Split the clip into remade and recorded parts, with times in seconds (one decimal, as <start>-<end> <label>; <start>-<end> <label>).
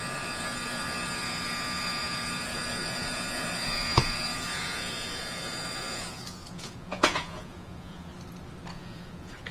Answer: 0.0-8.1 remade; 8.1-8.7 recorded; 8.7-9.5 remade